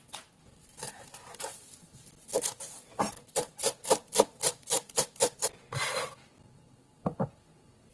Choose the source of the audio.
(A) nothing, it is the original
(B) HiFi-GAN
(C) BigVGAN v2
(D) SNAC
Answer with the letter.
A